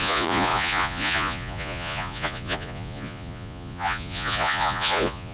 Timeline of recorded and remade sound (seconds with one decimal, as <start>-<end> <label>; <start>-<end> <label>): 0.0-5.3 remade

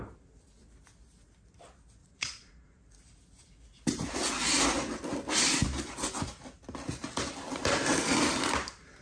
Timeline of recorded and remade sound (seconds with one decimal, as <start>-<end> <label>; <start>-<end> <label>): 0.0-2.0 recorded; 2.0-2.8 remade; 2.8-9.0 recorded

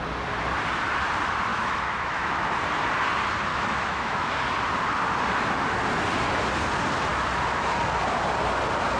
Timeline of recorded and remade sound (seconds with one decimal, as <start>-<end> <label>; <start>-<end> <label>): 0.0-1.5 recorded; 1.5-2.5 remade; 2.5-3.5 recorded; 3.5-4.3 remade; 4.3-9.0 recorded

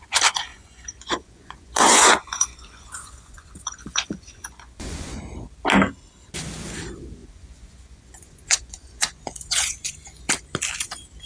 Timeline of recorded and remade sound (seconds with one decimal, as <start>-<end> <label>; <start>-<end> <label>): 0.0-0.5 recorded; 0.5-5.2 remade; 5.2-7.2 recorded; 7.2-10.3 remade; 10.3-11.3 recorded

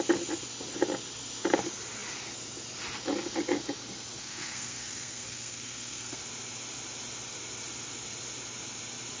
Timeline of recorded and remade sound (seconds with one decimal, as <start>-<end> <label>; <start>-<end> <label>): 0.0-4.2 recorded; 4.2-6.2 remade; 6.2-9.2 recorded

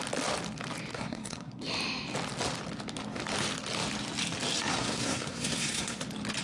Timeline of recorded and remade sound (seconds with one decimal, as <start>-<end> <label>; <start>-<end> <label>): 0.0-0.9 recorded; 0.9-1.6 remade; 1.6-4.7 recorded; 4.7-6.0 remade; 6.0-6.4 recorded